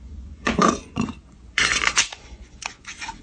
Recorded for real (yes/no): no